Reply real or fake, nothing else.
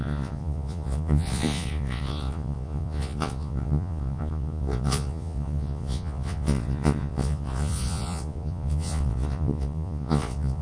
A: fake